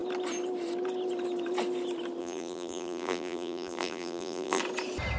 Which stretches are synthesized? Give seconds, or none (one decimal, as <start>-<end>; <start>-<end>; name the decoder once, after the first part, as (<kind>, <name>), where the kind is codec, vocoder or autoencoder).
2.2-4.6 (vocoder, BigVGAN v2)